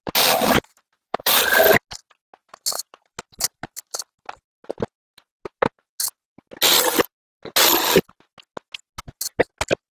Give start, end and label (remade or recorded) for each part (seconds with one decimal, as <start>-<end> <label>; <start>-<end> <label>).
0.0-0.7 recorded; 0.7-1.3 remade; 1.3-2.4 recorded; 2.4-4.0 remade; 4.0-9.9 recorded